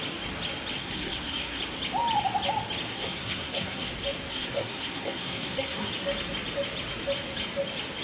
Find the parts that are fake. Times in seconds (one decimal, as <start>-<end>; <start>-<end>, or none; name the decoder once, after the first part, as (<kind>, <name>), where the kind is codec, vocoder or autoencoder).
0.8-1.6 (codec, SNAC); 2.9-3.9; 4.3-5.9